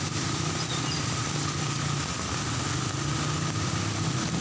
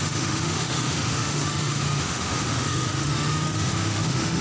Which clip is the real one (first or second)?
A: first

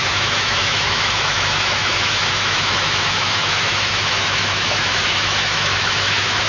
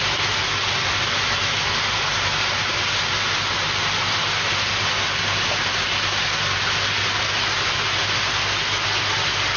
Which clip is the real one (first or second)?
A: second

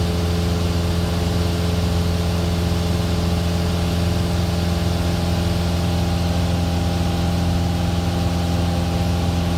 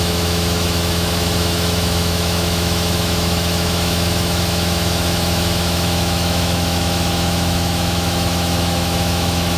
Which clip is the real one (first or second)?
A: first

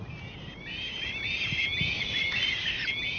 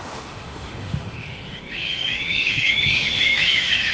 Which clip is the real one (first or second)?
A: first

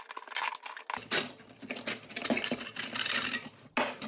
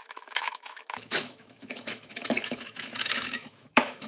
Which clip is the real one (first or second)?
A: first